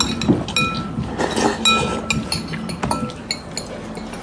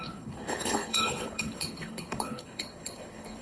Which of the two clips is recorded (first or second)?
first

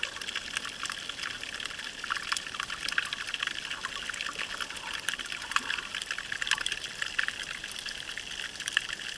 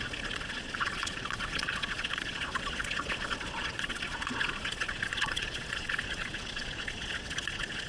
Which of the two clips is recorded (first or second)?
first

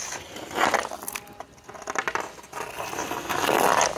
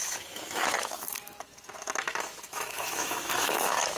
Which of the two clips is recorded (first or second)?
first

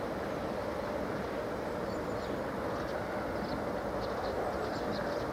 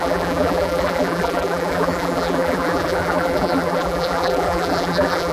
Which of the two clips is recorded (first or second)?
first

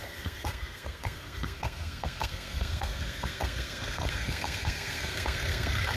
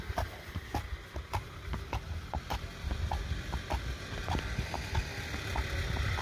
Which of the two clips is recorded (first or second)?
second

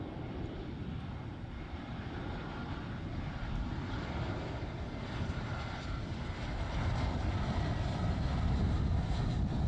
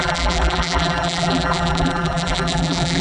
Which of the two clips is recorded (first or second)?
first